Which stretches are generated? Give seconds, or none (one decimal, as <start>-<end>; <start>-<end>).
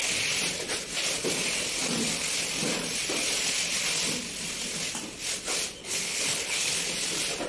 5.8-6.8